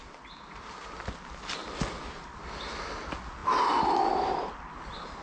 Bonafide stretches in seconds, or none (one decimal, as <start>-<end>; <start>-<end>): 0.0-5.2